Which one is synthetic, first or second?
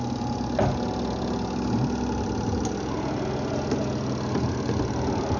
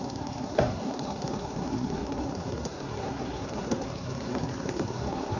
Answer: second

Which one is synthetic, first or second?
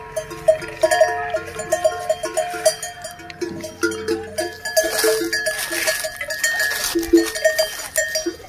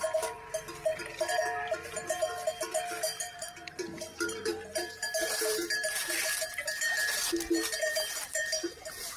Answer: second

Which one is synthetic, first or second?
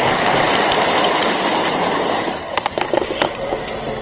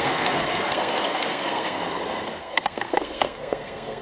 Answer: second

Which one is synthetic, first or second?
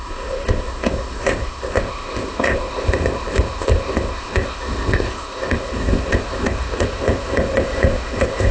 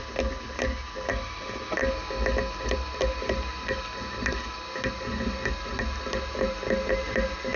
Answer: first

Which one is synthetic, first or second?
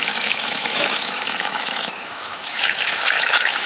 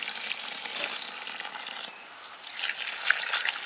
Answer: first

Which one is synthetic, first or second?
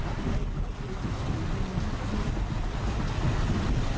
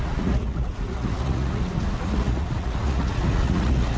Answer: second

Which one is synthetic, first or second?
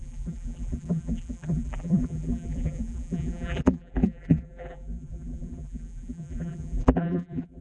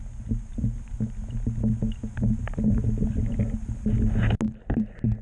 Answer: first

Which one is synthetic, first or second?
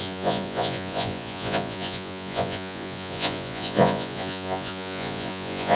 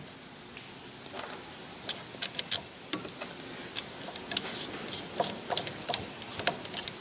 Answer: first